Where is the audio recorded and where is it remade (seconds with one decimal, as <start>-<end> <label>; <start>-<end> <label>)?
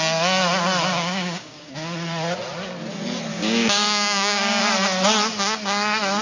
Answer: 0.0-0.9 recorded; 0.9-1.7 remade; 1.7-3.3 recorded; 3.3-4.6 remade; 4.6-6.2 recorded